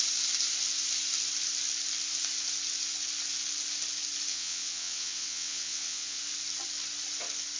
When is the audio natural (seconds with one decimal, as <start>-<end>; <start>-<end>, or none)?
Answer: 0.0-4.3; 6.2-7.6